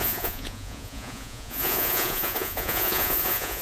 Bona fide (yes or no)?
no